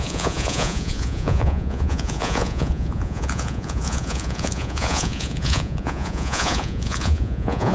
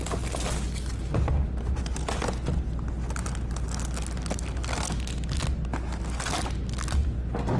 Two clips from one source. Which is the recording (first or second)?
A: second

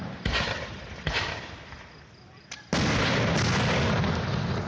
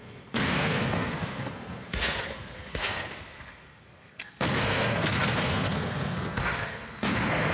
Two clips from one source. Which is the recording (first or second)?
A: first